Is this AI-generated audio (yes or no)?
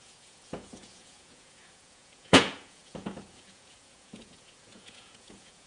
yes